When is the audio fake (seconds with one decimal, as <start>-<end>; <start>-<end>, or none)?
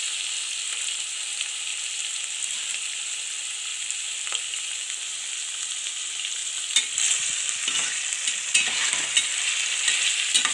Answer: 1.7-2.9; 3.7-4.8